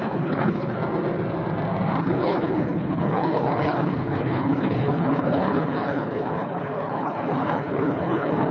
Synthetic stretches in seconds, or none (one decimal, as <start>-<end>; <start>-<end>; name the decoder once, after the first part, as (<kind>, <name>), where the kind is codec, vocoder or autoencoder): 0.0-0.8 (codec, HILCodec); 2.0-8.5